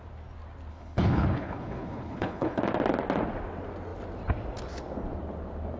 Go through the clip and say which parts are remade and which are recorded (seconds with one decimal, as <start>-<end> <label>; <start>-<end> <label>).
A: 0.0-0.7 recorded; 0.7-2.6 remade; 2.6-5.8 recorded